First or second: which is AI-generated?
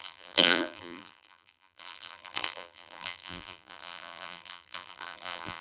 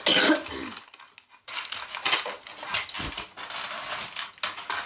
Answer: first